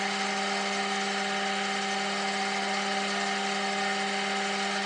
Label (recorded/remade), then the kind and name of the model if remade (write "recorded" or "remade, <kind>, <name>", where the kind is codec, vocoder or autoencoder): recorded